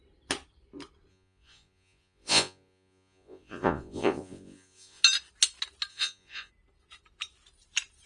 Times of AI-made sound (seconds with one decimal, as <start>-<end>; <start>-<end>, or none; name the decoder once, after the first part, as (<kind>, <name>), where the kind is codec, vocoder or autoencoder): 1.1-5.0 (vocoder, Vocos); 5.9-6.5